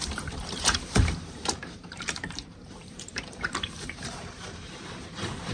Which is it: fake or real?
fake